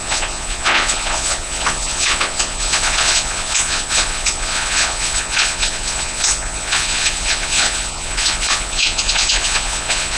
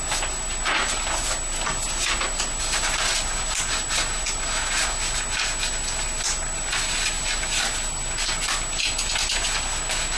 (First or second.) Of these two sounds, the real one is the second